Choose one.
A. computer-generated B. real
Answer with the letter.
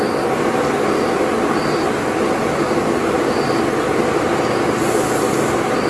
B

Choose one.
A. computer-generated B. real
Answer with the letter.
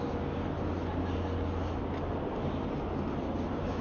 B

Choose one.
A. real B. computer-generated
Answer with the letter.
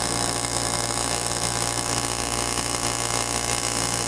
B